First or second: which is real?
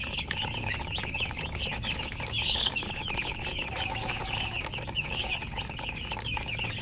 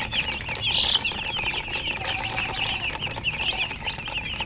second